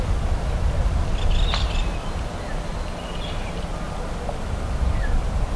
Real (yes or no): yes